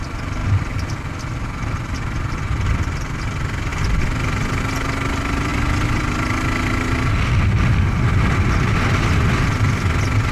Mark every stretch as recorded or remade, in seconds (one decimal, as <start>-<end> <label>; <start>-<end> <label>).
0.0-10.3 recorded